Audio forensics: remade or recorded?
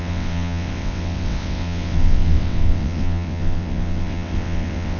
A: remade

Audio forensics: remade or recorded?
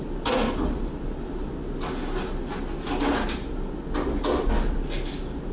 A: recorded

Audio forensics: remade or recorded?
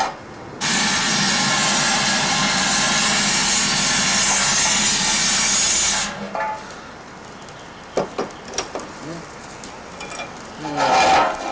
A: recorded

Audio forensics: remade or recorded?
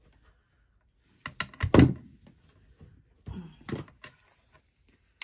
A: recorded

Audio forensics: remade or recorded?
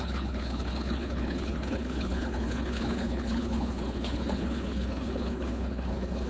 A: remade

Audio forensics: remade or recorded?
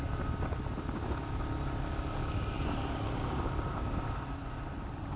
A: recorded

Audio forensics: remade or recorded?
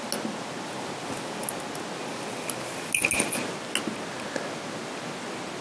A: recorded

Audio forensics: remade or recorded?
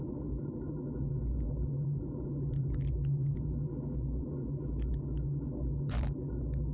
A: recorded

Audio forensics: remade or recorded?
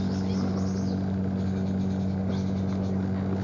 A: recorded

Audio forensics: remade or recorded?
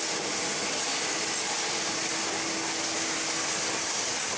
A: recorded